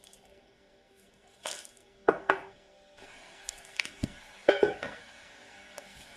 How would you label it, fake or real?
fake